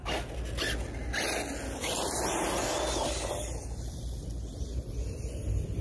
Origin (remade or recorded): recorded